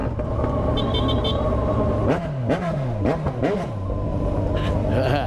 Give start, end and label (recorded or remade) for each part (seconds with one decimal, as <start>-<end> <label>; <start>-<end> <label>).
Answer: 0.0-5.3 recorded